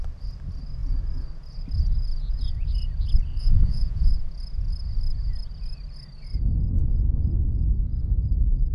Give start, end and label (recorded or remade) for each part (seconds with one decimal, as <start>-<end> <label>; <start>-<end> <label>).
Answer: 0.0-3.4 recorded; 3.4-4.1 remade; 4.1-8.7 recorded